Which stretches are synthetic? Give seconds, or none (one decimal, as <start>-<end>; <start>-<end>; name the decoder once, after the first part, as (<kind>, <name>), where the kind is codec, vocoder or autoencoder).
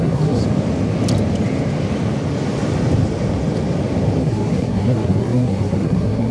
0.0-0.4 (codec, SNAC); 4.2-6.3